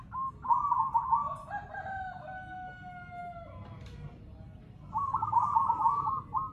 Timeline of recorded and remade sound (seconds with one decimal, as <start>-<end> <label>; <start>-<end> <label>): 0.0-6.5 recorded